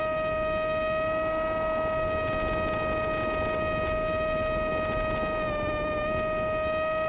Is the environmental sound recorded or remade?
recorded